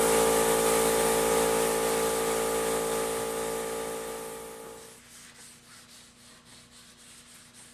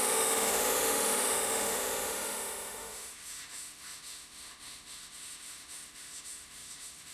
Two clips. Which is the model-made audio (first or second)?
second